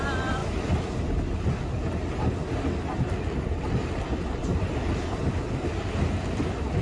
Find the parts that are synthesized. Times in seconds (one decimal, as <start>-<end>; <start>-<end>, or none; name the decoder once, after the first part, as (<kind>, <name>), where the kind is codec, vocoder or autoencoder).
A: 0.0-0.4 (vocoder, BigVGAN v2); 3.0-6.8

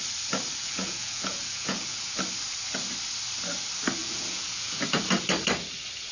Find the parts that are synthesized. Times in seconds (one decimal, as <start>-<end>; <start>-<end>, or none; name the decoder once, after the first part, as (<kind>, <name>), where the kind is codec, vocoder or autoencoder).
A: 0.6-2.1 (vocoder, Vocos); 4.0-4.8

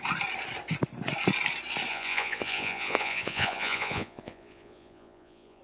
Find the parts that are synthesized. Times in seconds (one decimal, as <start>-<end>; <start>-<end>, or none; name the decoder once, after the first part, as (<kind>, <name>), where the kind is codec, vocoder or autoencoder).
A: 1.9-5.6 (vocoder, Vocos)

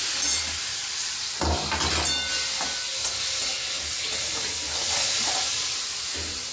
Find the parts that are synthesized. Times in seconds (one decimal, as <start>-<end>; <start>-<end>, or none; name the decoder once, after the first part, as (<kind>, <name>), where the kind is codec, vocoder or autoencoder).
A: none

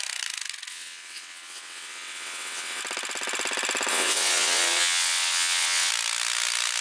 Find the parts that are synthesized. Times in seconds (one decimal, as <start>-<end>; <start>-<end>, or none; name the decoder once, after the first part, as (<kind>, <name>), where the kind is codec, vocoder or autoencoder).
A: 0.7-2.8 (vocoder, WaveNeXt); 3.9-5.9

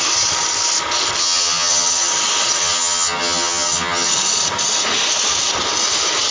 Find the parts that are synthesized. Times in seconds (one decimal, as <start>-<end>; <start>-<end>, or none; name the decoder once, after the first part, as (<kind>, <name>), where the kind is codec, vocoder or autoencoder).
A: 1.2-2.1 (vocoder, HiFi-GAN); 2.6-4.1